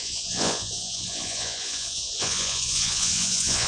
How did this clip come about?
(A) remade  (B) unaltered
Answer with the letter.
A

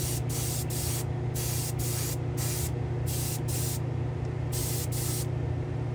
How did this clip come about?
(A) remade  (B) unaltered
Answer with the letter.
B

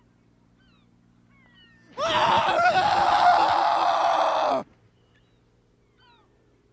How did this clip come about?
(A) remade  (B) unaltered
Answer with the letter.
B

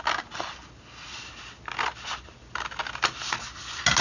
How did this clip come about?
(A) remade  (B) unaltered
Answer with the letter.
B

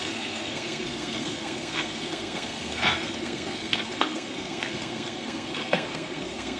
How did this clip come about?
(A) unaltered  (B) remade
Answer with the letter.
B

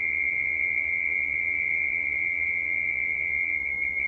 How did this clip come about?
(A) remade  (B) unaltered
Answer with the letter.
A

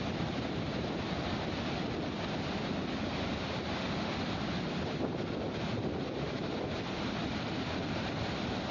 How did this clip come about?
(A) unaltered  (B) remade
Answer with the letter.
A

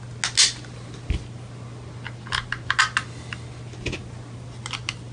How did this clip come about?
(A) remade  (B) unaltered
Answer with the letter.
B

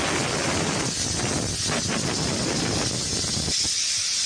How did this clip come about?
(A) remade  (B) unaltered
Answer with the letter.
B